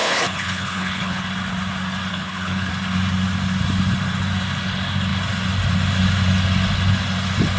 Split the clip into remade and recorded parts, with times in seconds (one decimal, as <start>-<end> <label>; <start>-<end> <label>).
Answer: 0.0-1.2 remade; 1.2-2.1 recorded; 2.1-2.7 remade; 2.7-7.6 recorded